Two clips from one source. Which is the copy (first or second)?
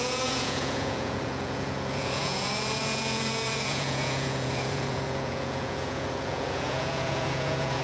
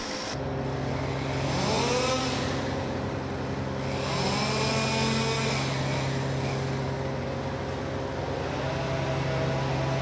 first